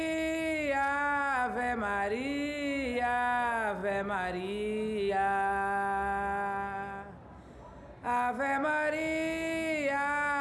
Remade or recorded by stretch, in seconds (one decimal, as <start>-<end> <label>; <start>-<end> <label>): 0.0-10.4 recorded